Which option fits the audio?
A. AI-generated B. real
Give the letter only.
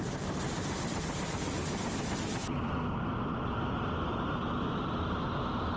B